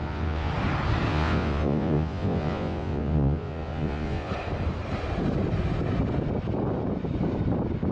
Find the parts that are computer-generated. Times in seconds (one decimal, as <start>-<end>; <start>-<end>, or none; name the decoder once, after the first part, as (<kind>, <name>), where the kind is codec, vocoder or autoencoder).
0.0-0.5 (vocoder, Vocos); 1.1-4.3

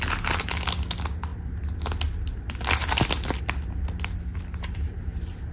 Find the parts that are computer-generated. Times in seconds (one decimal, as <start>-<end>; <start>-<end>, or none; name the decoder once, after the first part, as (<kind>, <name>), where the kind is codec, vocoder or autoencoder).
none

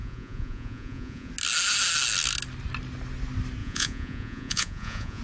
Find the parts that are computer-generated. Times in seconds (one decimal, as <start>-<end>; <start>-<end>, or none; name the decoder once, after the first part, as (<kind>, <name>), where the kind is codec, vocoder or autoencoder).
0.0-1.3 (vocoder, Vocos); 3.6-5.2